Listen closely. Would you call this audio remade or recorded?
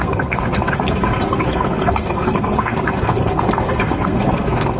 remade